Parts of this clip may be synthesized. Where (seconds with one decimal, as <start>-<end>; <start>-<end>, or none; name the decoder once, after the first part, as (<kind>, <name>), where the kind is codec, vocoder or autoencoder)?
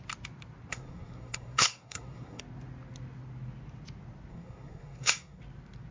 0.7-2.4 (codec, SNAC); 4.3-5.4